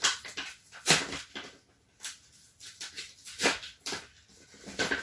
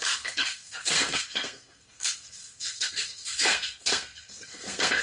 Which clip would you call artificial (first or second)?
second